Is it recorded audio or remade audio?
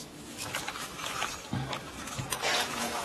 remade